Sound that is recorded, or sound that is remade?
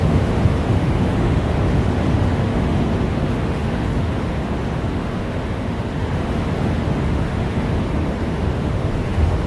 remade